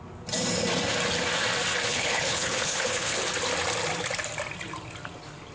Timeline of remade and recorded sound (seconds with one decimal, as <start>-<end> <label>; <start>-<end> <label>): 0.0-1.9 recorded; 1.9-3.2 remade; 3.2-5.5 recorded

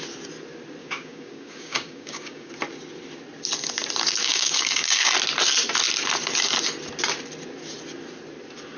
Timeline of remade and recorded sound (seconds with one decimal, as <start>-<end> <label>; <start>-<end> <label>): 0.0-0.8 recorded; 0.8-2.5 remade; 2.5-4.2 recorded; 4.2-5.1 remade; 5.1-8.8 recorded

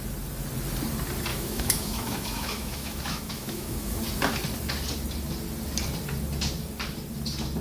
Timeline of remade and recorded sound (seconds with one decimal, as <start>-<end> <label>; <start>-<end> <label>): 0.0-1.3 recorded; 1.3-4.0 remade; 4.0-7.6 recorded

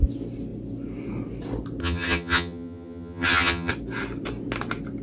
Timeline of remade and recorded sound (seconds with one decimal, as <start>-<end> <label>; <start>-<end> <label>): 0.0-1.8 recorded; 1.8-3.7 remade; 3.7-5.0 recorded

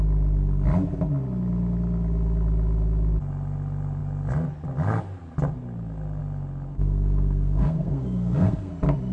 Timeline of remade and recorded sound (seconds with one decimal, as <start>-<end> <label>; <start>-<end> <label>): 0.0-6.7 recorded; 6.7-8.7 remade; 8.7-9.1 recorded

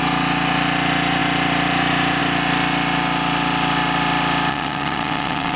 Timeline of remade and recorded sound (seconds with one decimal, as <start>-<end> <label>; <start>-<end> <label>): 0.0-4.5 recorded; 4.5-5.6 remade

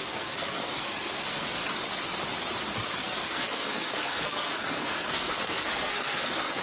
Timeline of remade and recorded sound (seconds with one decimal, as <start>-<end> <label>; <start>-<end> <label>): 0.0-1.6 remade; 1.6-3.0 recorded; 3.0-6.6 remade